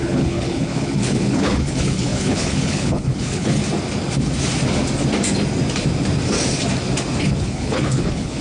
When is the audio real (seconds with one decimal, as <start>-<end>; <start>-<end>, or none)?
3.6-7.2